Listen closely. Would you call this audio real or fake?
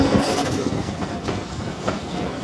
fake